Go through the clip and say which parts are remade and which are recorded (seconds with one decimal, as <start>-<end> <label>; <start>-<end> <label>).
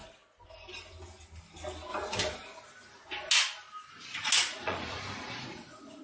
0.0-4.6 recorded; 4.6-6.0 remade